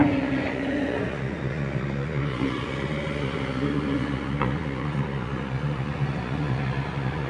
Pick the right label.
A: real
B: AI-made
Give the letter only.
B